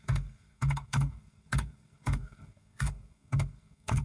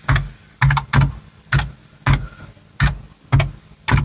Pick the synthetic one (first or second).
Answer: first